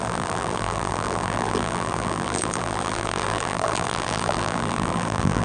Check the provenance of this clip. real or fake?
fake